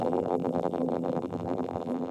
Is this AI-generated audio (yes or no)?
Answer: yes